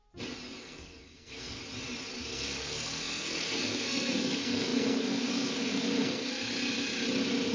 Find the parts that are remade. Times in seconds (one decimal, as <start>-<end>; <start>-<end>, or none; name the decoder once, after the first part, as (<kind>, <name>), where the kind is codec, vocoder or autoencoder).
0.6-1.6 (codec, SNAC); 2.2-6.3